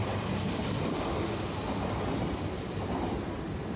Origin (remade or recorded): recorded